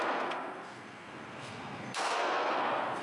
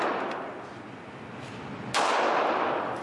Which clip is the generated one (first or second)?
first